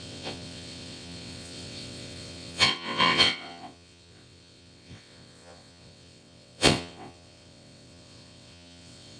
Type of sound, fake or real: fake